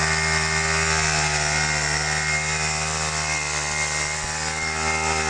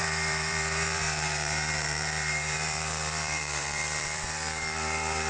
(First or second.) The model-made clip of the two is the second